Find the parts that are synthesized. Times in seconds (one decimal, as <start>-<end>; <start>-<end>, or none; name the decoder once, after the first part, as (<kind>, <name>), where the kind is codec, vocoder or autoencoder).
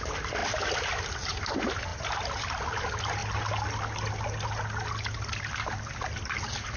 none